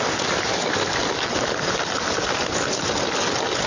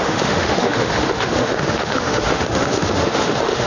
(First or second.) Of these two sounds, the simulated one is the second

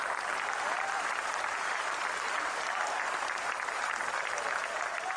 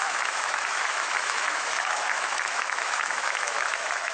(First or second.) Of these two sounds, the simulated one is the second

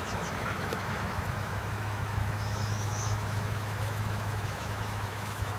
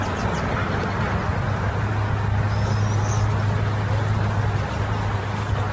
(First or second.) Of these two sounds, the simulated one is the first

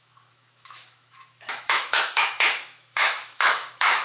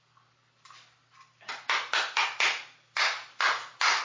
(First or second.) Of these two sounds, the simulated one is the first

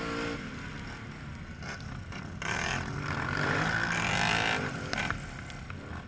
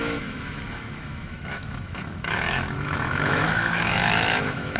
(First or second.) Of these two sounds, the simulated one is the second